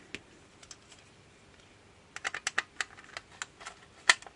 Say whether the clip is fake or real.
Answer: real